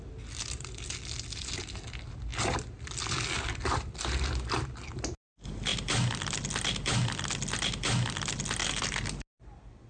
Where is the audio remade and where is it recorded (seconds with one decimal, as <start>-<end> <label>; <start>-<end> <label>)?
0.0-9.9 recorded